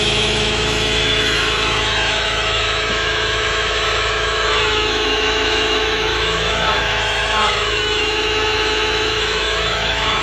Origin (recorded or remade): remade